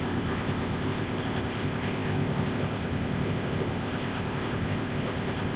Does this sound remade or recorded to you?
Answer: remade